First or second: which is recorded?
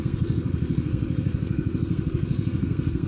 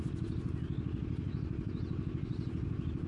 second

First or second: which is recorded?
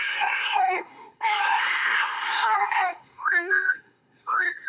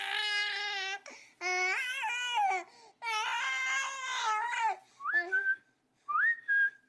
second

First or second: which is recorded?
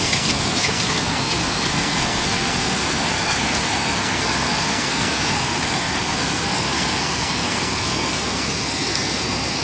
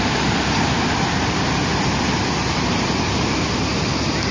second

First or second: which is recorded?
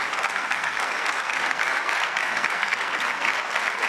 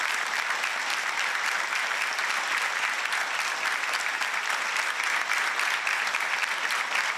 second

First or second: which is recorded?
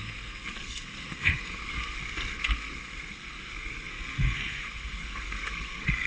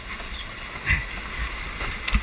second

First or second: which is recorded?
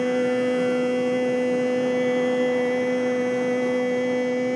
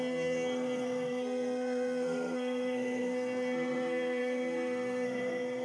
first